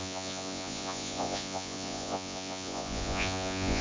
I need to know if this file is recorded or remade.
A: remade